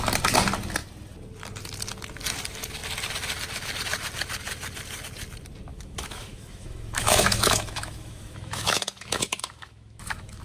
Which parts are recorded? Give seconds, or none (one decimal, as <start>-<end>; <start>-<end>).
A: 0.0-5.7